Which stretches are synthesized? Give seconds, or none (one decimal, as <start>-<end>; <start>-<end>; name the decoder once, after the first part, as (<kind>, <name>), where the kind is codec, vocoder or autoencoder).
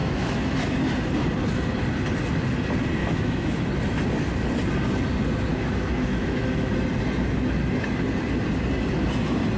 0.0-0.8 (autoencoder, DAC-VAE); 3.0-3.7; 5.5-6.7